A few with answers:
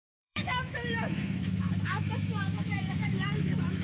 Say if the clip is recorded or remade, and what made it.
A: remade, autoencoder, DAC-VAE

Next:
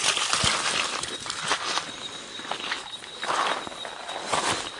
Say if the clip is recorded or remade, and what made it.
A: recorded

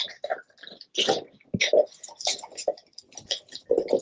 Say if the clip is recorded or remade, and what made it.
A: recorded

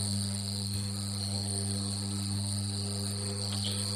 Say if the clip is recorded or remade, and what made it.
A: remade, codec, SNAC